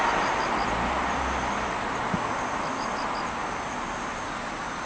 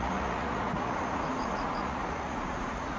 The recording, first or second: first